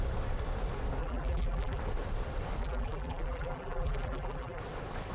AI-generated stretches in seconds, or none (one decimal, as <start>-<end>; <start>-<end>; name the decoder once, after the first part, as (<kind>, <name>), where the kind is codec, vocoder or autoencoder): 1.0-1.8 (vocoder, BigVGAN v2); 2.6-4.6